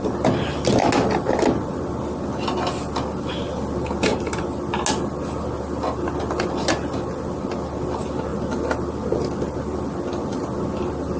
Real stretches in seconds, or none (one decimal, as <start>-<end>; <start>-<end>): 0.0-11.2